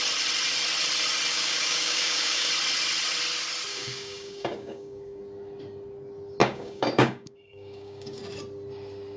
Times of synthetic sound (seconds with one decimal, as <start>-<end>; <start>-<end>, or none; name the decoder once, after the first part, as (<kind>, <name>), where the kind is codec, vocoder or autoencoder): 1.3-2.5 (codec, DAC); 3.7-5.2; 6.4-8.2

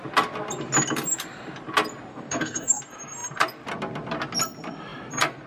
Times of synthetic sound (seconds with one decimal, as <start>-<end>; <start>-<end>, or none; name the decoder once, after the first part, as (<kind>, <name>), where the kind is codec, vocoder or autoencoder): 2.1-2.8 (codec, DAC)